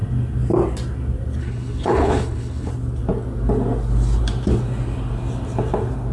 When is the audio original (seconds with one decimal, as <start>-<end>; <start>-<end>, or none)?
0.0-1.4; 2.7-6.1